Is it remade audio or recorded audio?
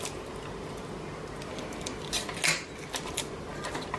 recorded